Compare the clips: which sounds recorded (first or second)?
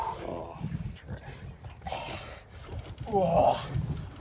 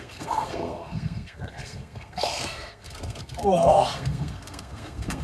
first